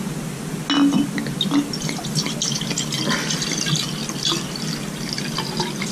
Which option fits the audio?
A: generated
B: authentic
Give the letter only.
B